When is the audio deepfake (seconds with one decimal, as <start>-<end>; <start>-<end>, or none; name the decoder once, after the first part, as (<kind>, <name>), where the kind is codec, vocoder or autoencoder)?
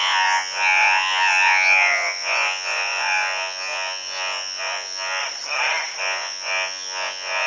0.0-5.2 (vocoder, Vocos); 6.0-7.5